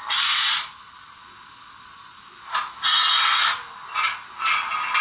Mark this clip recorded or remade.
recorded